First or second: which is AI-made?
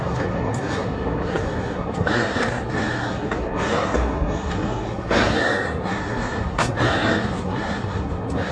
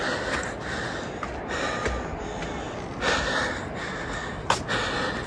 first